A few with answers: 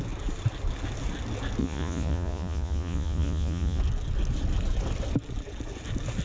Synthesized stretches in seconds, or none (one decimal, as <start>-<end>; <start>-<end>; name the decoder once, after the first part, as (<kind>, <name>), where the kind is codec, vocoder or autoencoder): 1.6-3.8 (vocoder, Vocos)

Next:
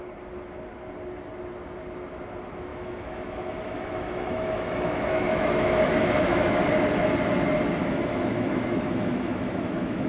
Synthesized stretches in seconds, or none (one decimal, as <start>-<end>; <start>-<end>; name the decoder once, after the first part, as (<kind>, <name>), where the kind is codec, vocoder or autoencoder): 2.7-6.6 (autoencoder, DAC-VAE); 7.8-10.1

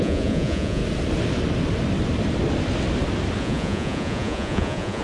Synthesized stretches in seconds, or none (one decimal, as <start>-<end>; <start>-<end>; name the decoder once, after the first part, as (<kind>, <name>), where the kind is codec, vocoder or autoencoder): 0.0-0.8 (vocoder, Vocos); 3.4-5.0

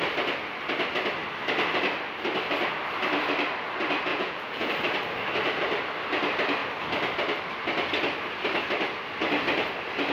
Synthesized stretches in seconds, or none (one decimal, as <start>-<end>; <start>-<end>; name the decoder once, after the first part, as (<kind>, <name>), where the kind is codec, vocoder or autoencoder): 4.1-4.7 (vocoder, Vocos)

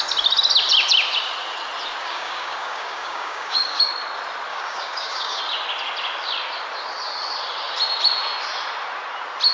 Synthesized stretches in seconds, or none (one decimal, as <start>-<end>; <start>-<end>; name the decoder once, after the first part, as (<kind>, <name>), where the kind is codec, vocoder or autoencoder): 2.0-3.9 (codec, DAC); 4.5-5.4

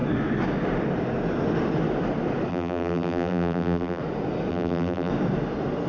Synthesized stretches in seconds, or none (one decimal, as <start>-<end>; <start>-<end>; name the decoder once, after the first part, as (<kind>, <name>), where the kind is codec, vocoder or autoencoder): 2.5-4.0 (vocoder, BigVGAN v2); 4.5-5.1

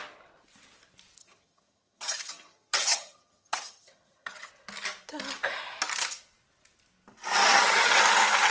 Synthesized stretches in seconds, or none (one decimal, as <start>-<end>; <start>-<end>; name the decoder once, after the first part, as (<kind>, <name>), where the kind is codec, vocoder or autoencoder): 1.2-4.5 (vocoder, HiFi-GAN); 7.4-8.0